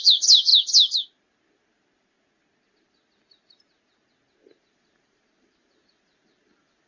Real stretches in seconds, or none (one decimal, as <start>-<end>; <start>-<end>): 0.5-4.6